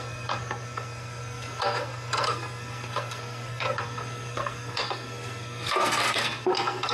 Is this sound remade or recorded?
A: remade